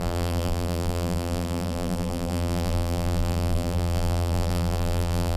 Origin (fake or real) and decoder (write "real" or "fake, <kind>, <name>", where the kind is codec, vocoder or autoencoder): fake, vocoder, BigVGAN v2